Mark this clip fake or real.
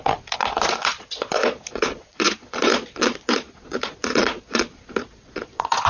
fake